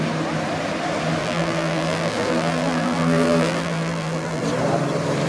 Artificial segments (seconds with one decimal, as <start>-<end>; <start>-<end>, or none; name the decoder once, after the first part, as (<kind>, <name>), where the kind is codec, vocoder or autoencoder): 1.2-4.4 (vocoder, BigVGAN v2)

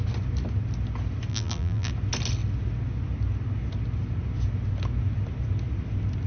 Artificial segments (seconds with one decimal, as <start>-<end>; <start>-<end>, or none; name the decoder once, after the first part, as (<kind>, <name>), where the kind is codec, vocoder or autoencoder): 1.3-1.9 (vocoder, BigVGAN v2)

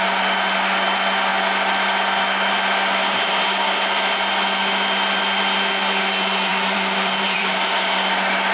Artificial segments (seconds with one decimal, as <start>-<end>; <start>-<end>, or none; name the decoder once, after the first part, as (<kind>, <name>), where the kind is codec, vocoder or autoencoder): 6.5-7.7 (vocoder, BigVGAN v2)

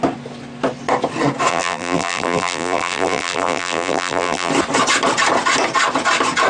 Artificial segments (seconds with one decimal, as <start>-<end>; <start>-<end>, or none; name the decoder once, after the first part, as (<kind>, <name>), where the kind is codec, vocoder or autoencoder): 1.5-4.5 (vocoder, BigVGAN v2)

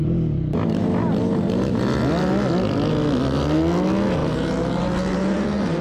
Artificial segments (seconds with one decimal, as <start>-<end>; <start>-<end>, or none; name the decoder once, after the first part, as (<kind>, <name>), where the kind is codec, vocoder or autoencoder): 4.2-5.8 (vocoder, BigVGAN v2)

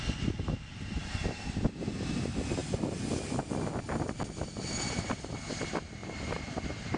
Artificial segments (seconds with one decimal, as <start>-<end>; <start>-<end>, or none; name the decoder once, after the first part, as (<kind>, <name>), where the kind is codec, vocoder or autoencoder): 1.0-1.8 (vocoder, BigVGAN v2); 6.0-7.0